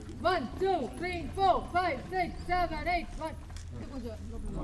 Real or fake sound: real